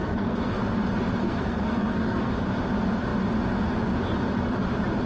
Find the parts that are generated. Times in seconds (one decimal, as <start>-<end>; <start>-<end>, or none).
0.0-0.6; 1.2-2.3